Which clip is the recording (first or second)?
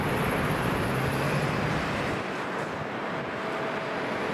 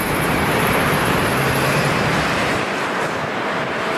first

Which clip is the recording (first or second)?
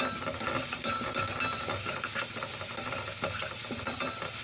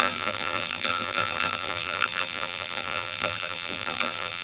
first